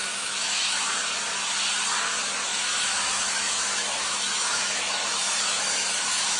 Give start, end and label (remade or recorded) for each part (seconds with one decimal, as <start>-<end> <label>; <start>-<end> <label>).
0.0-0.8 remade; 0.8-2.5 recorded; 2.5-6.4 remade